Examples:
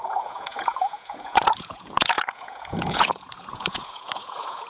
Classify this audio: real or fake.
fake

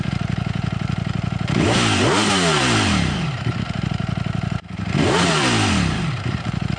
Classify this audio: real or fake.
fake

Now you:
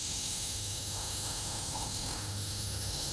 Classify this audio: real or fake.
fake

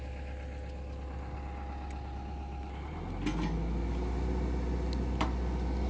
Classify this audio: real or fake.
real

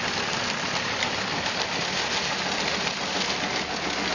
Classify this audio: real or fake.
real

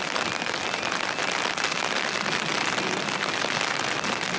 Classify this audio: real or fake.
real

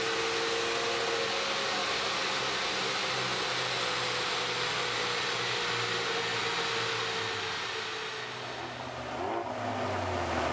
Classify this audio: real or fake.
real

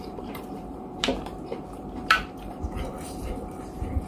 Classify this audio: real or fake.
fake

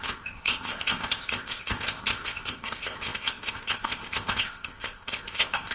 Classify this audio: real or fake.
fake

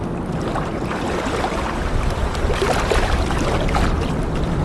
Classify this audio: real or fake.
real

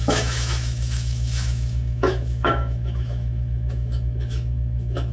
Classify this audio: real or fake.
fake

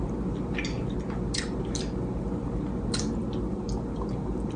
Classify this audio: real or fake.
real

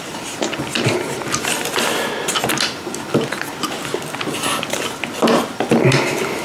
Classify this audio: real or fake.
real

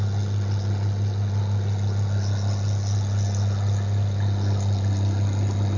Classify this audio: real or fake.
real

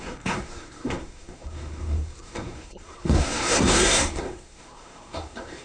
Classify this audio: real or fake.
fake